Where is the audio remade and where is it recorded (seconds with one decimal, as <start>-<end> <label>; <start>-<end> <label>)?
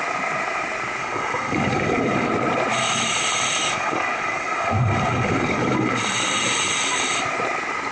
0.0-1.0 recorded; 1.0-2.3 remade; 2.3-3.6 recorded; 3.6-6.0 remade; 6.0-7.9 recorded